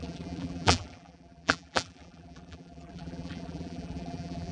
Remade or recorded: remade